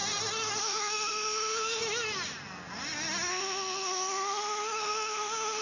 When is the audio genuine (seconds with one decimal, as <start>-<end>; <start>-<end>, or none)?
0.0-0.6; 1.8-3.3